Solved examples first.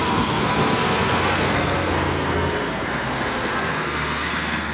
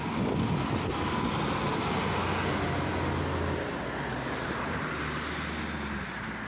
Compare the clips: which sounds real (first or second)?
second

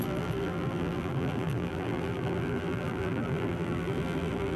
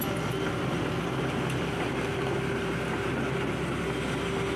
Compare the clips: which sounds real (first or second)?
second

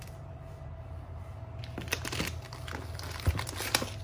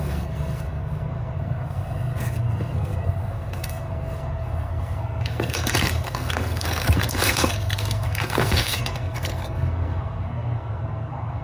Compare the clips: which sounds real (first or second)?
first